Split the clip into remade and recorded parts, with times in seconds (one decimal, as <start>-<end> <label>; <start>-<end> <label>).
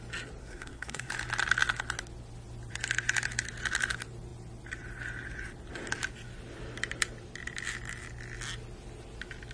0.0-0.4 recorded; 0.4-1.1 remade; 1.1-9.5 recorded